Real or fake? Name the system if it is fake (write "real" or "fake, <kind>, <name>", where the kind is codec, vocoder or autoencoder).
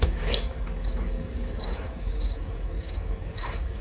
fake, codec, DAC